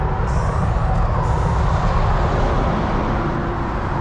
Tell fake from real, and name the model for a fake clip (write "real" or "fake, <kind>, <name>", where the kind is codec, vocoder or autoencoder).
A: real